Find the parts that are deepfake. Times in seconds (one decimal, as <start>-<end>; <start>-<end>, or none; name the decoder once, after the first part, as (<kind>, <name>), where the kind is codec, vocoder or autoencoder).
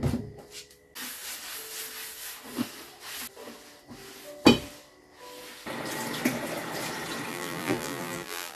7.3-8.6 (vocoder, BigVGAN v2)